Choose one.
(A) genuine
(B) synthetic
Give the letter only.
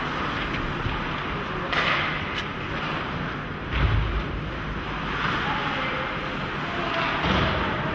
A